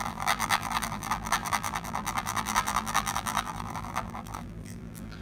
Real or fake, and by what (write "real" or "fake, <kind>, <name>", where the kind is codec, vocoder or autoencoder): fake, vocoder, BigVGAN v2